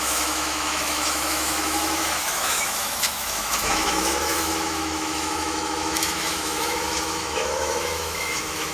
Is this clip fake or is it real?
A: fake